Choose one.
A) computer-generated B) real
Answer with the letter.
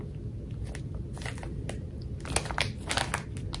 B